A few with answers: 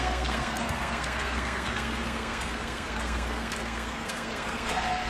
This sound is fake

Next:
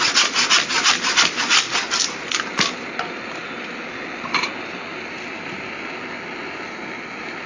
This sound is real